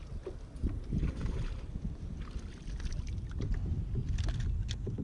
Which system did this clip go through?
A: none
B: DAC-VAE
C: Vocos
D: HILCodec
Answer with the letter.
A